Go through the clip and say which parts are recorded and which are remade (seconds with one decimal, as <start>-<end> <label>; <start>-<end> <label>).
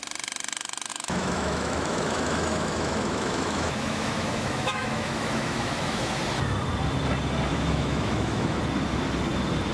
0.0-0.9 recorded; 0.9-6.2 remade; 6.2-7.5 recorded; 7.5-8.6 remade; 8.6-9.7 recorded